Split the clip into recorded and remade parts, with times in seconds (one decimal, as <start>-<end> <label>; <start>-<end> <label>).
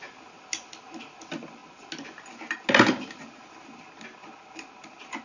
0.0-5.2 recorded